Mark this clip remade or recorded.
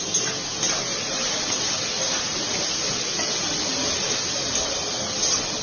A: recorded